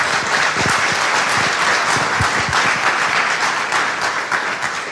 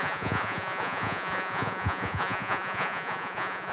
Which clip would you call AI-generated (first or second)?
second